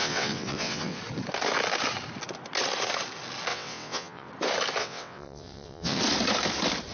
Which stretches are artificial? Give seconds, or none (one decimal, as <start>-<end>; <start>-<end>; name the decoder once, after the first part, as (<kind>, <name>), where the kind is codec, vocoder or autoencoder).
0.0-1.0 (vocoder, WaveNeXt); 3.5-4.3; 4.8-6.0